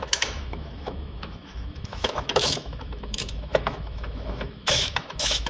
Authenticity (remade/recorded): remade